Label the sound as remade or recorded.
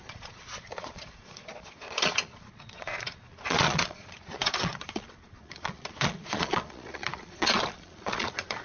remade